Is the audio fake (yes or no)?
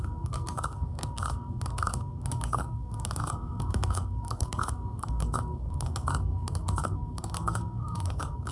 yes